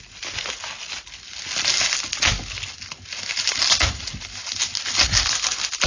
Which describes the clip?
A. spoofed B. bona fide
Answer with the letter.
B